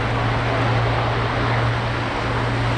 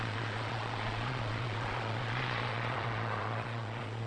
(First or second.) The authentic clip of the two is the first